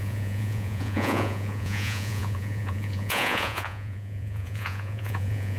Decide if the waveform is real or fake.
fake